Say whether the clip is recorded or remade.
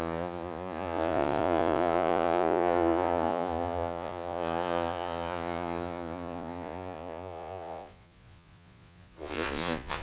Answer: remade